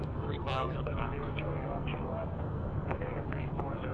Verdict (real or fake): fake